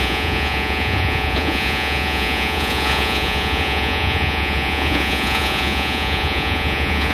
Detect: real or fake fake